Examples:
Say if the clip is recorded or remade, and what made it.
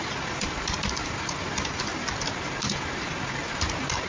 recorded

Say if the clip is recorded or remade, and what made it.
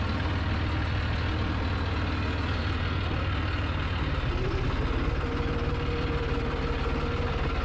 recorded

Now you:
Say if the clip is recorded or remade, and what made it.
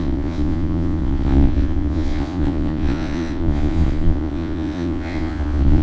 remade, vocoder, Vocos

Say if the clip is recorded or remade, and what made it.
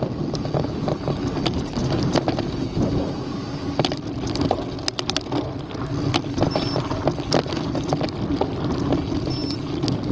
recorded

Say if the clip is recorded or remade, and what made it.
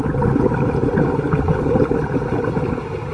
recorded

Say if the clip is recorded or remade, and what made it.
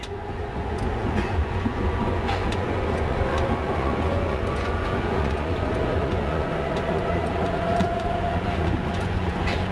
remade, vocoder, Vocos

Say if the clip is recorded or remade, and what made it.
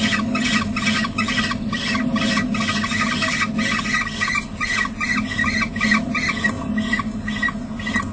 recorded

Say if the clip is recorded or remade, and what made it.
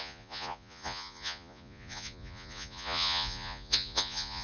remade, vocoder, Vocos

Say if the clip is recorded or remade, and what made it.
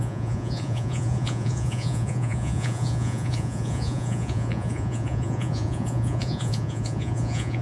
remade, vocoder, Vocos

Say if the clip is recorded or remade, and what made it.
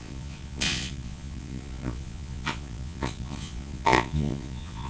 remade, vocoder, Vocos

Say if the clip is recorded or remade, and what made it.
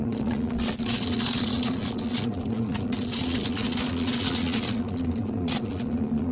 remade, vocoder, Vocos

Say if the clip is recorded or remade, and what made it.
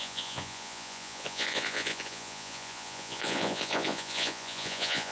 remade, vocoder, Vocos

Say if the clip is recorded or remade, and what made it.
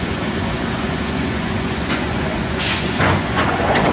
remade, vocoder, Vocos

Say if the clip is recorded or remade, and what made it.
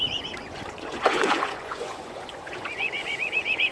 remade, vocoder, Vocos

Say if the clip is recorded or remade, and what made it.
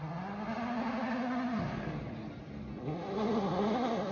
recorded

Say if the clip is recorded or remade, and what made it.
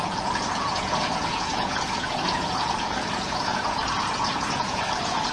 remade, vocoder, Vocos